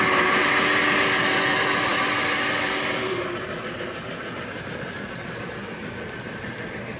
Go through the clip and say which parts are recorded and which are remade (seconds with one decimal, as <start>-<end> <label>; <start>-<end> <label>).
0.0-7.0 recorded